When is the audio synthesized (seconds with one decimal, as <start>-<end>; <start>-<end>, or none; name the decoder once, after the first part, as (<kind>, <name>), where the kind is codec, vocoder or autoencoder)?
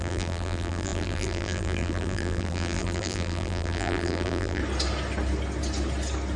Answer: 0.0-4.6 (vocoder, BigVGAN v2)